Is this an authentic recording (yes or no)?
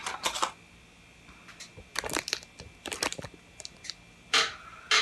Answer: yes